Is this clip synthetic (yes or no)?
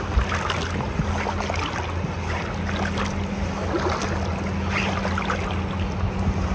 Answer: no